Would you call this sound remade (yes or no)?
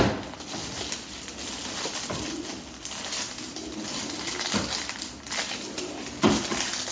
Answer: no